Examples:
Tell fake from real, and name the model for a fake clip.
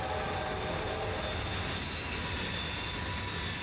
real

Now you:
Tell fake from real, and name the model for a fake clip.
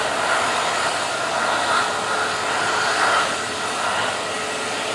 real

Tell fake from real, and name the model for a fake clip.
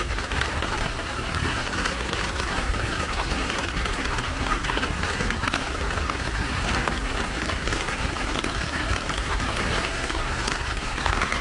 fake, codec, SNAC